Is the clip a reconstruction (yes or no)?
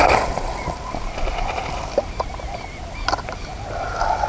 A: no